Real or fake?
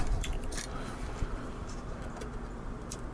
fake